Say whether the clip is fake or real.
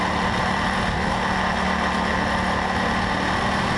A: real